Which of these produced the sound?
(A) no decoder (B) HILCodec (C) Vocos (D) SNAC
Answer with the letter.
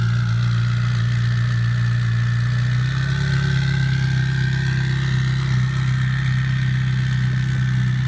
A